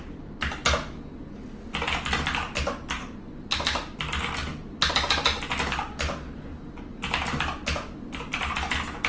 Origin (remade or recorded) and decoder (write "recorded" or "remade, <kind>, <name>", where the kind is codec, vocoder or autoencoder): recorded